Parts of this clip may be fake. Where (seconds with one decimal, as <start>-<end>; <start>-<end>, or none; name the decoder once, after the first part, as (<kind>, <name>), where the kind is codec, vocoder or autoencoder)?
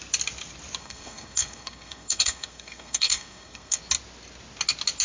0.8-3.8 (codec, SNAC)